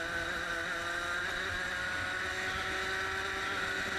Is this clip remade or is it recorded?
recorded